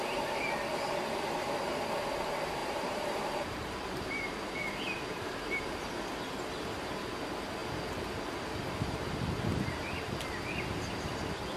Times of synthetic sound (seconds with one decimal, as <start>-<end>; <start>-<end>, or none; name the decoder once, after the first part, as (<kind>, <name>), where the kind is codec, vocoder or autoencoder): 2.6-5.9 (vocoder, BigVGAN v2)